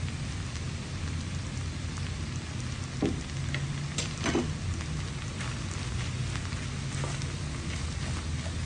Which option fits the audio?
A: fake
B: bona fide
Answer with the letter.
B